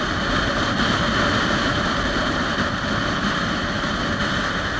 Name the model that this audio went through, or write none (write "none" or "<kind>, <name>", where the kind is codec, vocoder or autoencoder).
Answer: none